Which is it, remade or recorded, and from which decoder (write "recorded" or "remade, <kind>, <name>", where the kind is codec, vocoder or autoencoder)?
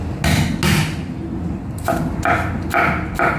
recorded